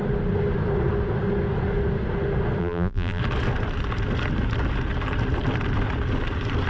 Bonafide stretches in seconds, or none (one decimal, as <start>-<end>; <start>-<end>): 0.0-2.6; 3.2-6.7

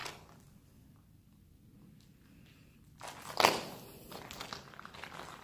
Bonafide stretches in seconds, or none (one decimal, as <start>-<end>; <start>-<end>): 0.0-5.4

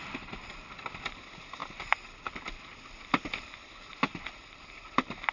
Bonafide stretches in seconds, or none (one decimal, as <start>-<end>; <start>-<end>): 0.0-5.3

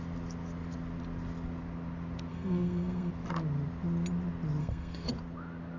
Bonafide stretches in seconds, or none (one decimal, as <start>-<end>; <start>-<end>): 0.0-2.3; 3.1-4.6; 5.1-5.8